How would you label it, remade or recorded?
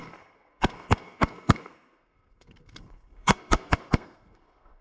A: remade